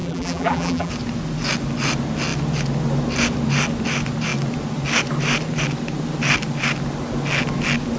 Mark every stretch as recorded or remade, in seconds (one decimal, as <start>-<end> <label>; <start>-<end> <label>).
0.0-0.9 remade; 0.9-8.0 recorded